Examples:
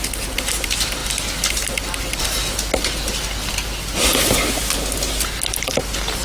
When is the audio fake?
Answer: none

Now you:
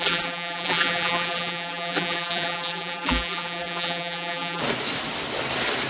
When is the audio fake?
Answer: 0.0-4.6 (vocoder, BigVGAN v2)

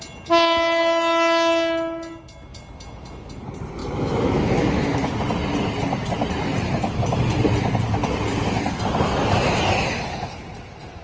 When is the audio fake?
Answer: 3.8-5.1 (autoencoder, DAC-VAE)

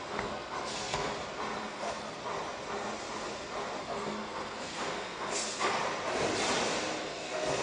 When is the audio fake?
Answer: 0.0-1.1 (codec, SNAC); 1.7-2.2; 3.8-5.8; 7.0-7.6

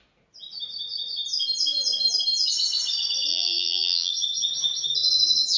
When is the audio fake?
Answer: 3.3-4.1 (vocoder, BigVGAN v2)

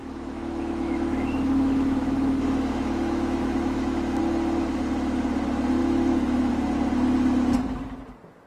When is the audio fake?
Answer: 0.0-4.2 (autoencoder, DAC-VAE); 5.8-6.5

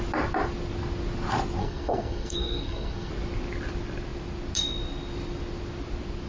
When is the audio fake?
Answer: 1.6-3.1 (codec, SNAC)

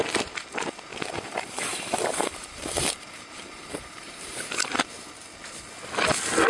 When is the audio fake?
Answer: 0.9-4.8 (vocoder, BigVGAN v2)